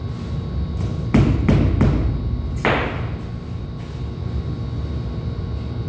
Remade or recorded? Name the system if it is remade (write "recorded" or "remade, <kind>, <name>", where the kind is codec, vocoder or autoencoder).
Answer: recorded